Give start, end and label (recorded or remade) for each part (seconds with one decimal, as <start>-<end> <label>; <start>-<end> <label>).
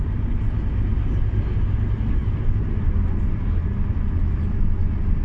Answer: 0.0-5.2 recorded